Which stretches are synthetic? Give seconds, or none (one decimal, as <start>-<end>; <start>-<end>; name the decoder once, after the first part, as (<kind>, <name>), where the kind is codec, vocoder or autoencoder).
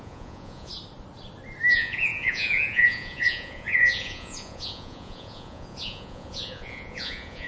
0.0-0.7 (vocoder, Vocos); 1.7-7.5